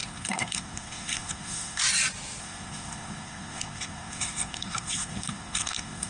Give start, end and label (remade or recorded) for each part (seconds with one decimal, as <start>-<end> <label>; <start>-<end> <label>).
0.0-1.8 remade; 1.8-2.4 recorded; 2.4-6.1 remade